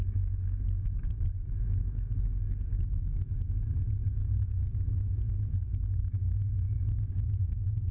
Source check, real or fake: fake